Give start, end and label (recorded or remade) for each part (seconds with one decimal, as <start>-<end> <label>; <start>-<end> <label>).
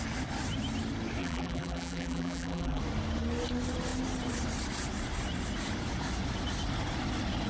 0.0-1.2 recorded; 1.2-2.8 remade; 2.8-7.5 recorded